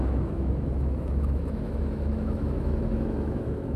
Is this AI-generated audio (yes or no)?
yes